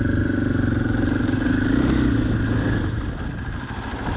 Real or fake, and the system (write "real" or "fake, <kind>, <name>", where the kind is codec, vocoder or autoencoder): real